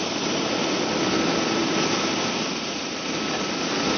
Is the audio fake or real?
fake